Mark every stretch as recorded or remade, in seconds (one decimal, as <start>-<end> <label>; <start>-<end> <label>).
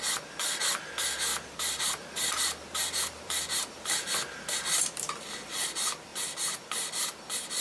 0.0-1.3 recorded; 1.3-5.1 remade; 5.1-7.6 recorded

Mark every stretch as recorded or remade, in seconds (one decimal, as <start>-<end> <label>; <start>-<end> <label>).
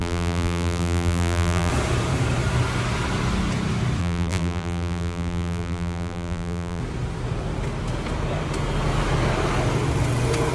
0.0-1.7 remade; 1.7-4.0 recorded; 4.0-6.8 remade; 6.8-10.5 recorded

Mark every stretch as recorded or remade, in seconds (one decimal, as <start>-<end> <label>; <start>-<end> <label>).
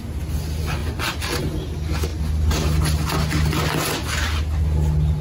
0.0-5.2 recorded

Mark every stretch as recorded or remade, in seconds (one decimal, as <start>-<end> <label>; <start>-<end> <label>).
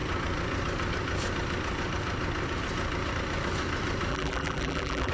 0.0-4.1 recorded; 4.1-5.1 remade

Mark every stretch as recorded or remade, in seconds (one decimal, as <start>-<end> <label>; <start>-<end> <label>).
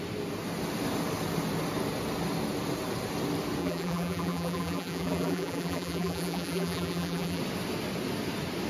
0.0-3.6 recorded; 3.6-7.4 remade; 7.4-8.7 recorded